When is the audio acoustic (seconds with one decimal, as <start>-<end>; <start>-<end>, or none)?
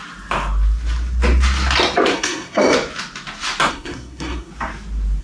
0.0-2.1; 2.6-3.7; 4.5-5.2